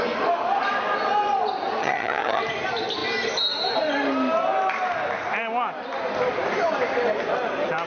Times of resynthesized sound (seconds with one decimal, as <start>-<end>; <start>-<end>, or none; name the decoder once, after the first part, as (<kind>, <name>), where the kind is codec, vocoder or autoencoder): 1.8-2.4 (vocoder, HiFi-GAN)